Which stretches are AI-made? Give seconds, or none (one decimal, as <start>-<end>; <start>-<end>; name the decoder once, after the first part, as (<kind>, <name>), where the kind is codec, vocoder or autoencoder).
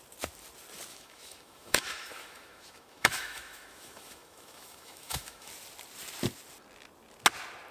0.9-5.5 (autoencoder, DAC-VAE)